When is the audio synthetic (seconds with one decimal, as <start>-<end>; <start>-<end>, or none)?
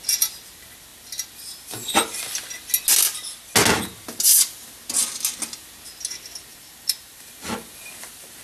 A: 6.5-8.4